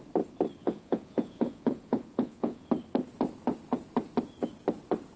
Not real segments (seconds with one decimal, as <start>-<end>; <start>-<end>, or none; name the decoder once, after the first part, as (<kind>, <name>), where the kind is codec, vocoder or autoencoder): 0.6-2.7 (vocoder, Vocos)